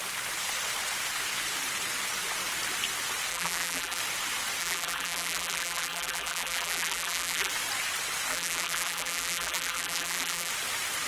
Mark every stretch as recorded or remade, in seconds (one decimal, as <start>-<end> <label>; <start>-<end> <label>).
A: 0.0-3.3 recorded; 3.3-4.0 remade; 4.0-4.6 recorded; 4.6-7.5 remade; 7.5-8.3 recorded; 8.3-10.5 remade; 10.5-11.1 recorded